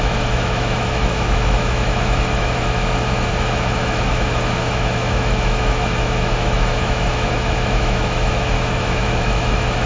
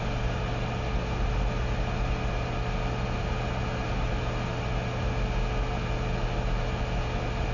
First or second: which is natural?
second